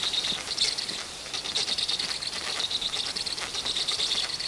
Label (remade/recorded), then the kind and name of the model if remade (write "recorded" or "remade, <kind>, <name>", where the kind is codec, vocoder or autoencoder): recorded